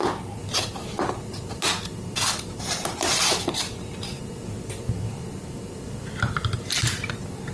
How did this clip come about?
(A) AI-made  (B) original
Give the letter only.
B